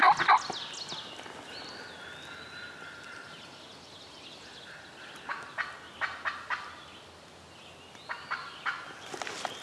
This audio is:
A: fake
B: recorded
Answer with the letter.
B